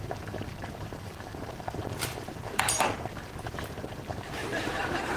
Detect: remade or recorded remade